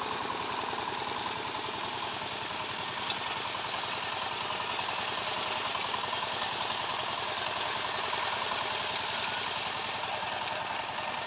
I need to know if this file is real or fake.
real